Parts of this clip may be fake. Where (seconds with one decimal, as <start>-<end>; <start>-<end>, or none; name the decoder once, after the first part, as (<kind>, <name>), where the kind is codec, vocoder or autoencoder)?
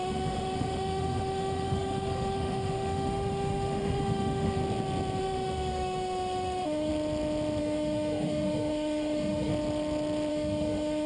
0.0-4.6 (autoencoder, DAC-VAE); 5.2-6.9; 7.6-9.5; 10.3-11.1